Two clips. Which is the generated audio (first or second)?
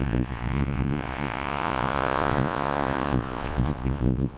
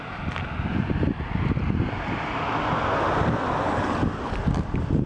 first